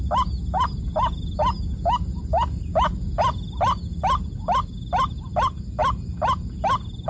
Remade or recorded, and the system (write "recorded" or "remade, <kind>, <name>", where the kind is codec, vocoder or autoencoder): recorded